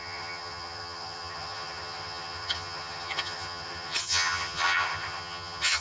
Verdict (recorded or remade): remade